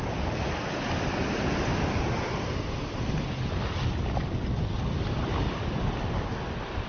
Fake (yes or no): no